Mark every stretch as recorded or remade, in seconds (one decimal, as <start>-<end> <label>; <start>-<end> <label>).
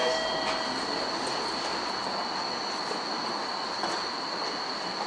0.0-1.0 remade; 1.0-5.1 recorded